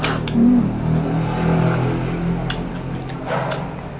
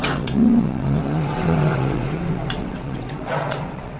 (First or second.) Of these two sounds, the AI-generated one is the second